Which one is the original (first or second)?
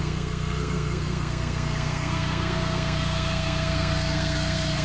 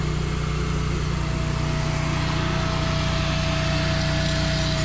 second